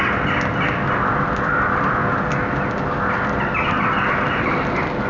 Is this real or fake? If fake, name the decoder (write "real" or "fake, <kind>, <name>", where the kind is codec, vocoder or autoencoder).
real